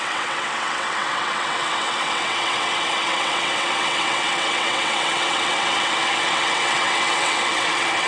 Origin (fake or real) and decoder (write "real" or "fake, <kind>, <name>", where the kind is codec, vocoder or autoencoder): fake, vocoder, WaveNeXt